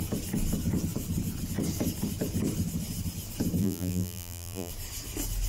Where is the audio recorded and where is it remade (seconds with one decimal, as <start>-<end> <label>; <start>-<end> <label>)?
0.0-3.6 recorded; 3.6-4.7 remade; 4.7-5.5 recorded